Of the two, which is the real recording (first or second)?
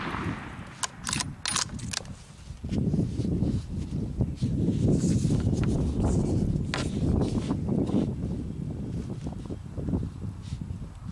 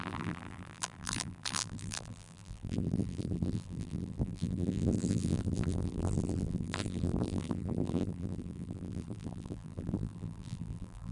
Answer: first